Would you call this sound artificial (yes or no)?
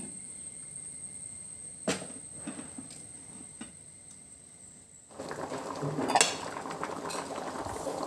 no